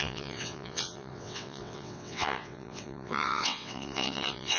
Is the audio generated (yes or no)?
yes